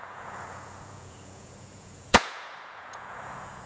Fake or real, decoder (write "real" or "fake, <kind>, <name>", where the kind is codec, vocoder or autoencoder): fake, vocoder, Vocos